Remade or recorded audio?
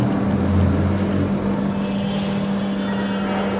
recorded